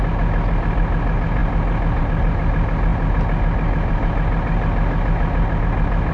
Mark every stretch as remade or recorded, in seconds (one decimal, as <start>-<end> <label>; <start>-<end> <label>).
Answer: 0.0-6.1 recorded